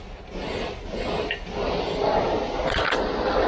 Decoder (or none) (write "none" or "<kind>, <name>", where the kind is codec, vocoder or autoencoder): none